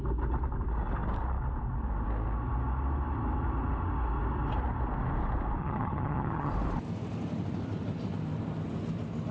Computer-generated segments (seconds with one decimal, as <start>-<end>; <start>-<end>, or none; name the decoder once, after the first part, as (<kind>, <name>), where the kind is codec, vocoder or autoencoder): 5.6-6.5 (vocoder, HiFi-GAN)